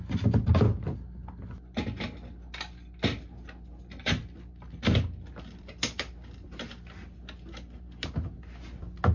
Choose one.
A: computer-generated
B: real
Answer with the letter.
B